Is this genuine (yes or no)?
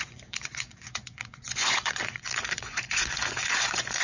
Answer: no